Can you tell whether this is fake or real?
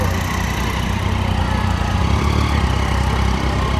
real